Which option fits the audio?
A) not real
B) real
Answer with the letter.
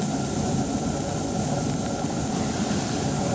B